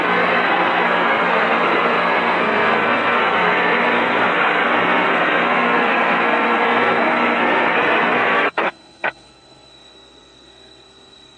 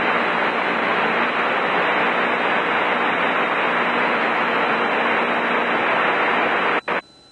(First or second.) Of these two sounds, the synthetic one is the first